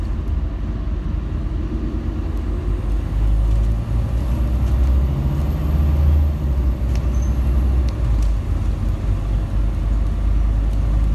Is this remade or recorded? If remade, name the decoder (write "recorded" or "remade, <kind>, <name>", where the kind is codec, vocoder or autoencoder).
recorded